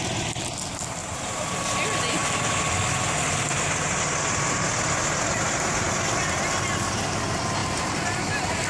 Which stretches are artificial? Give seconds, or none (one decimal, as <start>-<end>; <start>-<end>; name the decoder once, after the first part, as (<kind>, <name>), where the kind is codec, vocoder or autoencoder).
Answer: 1.0-1.5 (vocoder, BigVGAN v2)